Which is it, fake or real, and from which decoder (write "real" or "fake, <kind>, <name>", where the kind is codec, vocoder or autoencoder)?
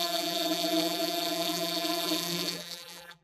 fake, vocoder, BigVGAN v2